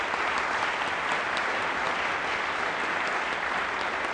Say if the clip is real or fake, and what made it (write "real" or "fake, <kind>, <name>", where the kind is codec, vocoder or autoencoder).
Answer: real